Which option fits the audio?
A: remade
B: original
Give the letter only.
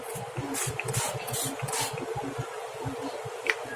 A